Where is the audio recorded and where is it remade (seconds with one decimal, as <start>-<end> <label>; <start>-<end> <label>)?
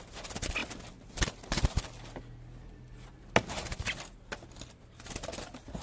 0.0-5.8 recorded